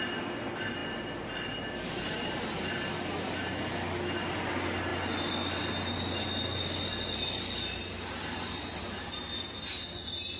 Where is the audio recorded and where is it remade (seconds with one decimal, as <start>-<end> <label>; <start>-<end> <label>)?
0.0-10.4 recorded